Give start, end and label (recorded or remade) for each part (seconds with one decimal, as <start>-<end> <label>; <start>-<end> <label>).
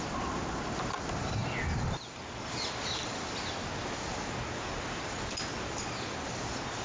0.0-6.8 recorded